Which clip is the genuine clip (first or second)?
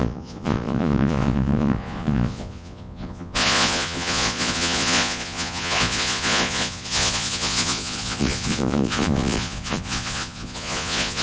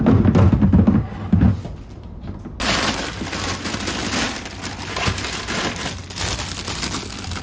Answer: second